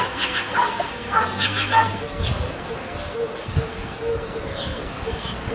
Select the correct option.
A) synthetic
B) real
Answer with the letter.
A